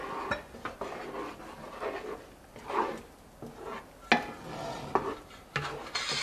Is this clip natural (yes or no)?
yes